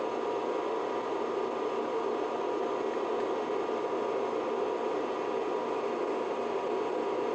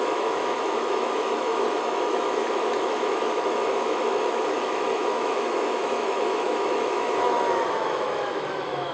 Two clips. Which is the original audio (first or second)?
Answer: first